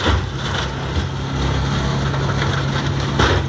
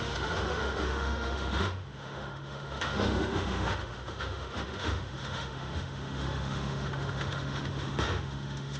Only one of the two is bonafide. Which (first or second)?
first